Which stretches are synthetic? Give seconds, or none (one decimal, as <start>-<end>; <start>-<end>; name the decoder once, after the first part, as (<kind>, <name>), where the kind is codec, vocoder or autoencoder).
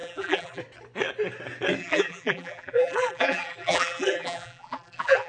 0.0-0.6 (vocoder, BigVGAN v2); 1.8-5.3